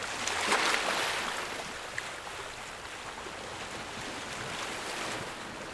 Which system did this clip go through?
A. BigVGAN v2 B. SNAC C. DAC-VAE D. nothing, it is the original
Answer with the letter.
D